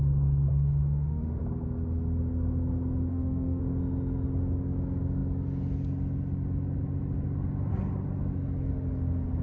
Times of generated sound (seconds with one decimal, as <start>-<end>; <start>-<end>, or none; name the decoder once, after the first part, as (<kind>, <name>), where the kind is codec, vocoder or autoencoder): 0.5-1.4 (autoencoder, DAC-VAE); 3.1-3.6